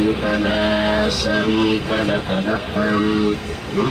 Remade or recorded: remade